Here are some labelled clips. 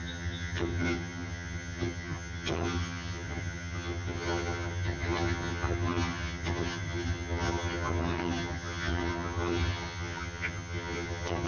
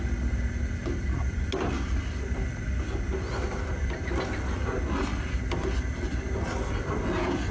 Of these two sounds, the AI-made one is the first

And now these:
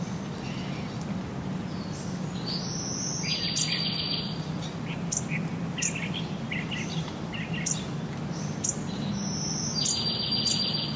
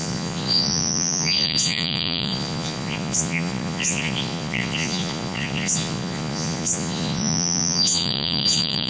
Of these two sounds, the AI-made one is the second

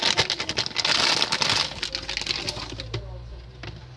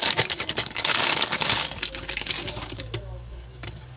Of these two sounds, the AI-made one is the second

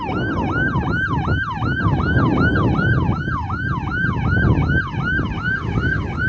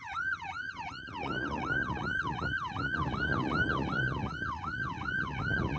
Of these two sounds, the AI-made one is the second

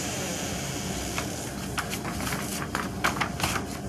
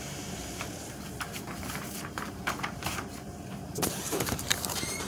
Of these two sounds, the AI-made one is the second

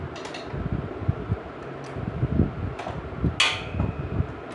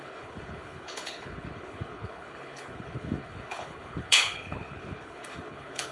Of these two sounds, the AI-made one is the second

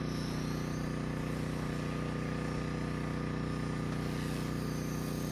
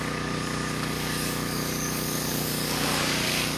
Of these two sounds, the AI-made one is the second